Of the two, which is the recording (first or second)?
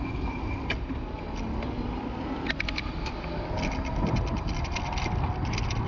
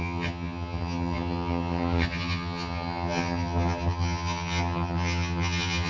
first